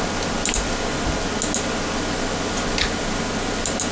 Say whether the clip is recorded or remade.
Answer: recorded